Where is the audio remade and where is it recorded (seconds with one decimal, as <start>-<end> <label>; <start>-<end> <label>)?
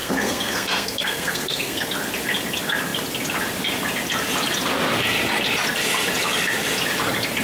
0.0-1.9 remade; 1.9-7.4 recorded